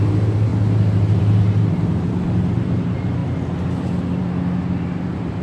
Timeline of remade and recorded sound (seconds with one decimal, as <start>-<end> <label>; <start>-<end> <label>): 0.0-5.4 recorded